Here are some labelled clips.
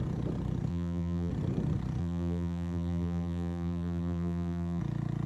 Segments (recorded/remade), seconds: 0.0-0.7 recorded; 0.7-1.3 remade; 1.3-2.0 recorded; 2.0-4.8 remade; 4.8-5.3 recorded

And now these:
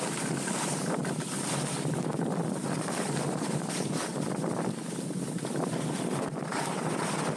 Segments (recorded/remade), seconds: 0.0-4.1 recorded; 4.1-7.4 remade

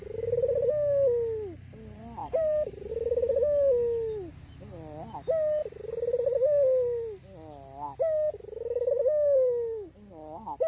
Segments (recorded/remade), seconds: 0.0-2.2 recorded; 2.2-2.9 remade; 2.9-10.7 recorded

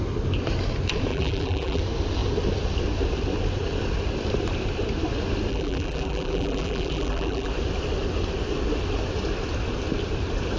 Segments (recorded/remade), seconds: 0.0-1.1 recorded; 1.1-1.8 remade; 1.8-5.5 recorded; 5.5-7.5 remade; 7.5-10.6 recorded

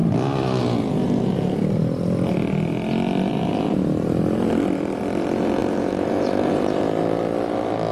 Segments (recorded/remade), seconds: 0.0-1.0 recorded; 1.0-1.6 remade; 1.6-3.3 recorded; 3.3-5.0 remade; 5.0-5.6 recorded; 5.6-6.8 remade; 6.8-7.9 recorded

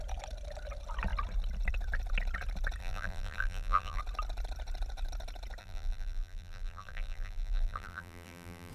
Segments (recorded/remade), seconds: 0.0-2.8 recorded; 2.8-4.0 remade; 4.0-5.6 recorded; 5.6-8.7 remade

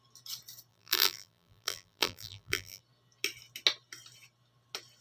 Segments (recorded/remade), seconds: 0.0-0.7 recorded; 0.7-2.8 remade; 2.8-5.0 recorded